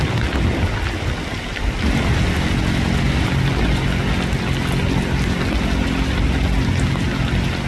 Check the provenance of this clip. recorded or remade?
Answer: recorded